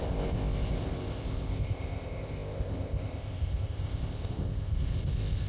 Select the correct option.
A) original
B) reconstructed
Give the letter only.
B